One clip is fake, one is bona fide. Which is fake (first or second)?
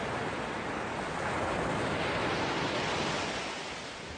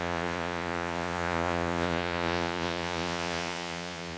second